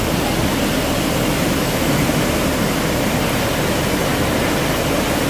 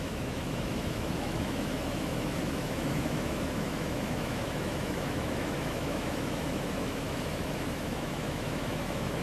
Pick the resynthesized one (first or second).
second